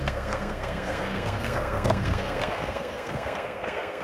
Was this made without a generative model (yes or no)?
no